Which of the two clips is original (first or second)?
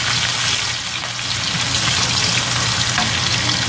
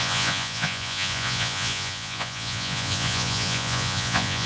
first